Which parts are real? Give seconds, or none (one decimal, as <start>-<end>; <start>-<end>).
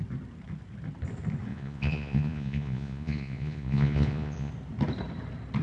0.0-1.5; 4.5-5.6